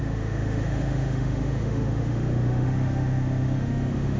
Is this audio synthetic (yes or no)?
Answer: yes